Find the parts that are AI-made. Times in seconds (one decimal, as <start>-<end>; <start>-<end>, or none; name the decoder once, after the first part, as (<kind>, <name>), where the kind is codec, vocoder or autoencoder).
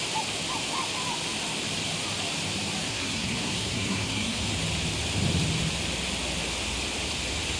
2.9-4.4 (codec, SNAC)